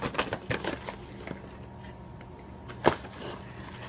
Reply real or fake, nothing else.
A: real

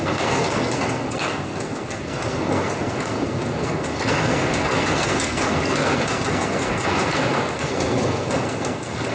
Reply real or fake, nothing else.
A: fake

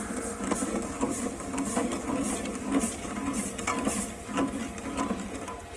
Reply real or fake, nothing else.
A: real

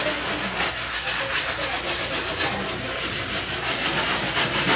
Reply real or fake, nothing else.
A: real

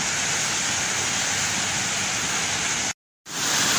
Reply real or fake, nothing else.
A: real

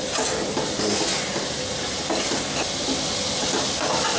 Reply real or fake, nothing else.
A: real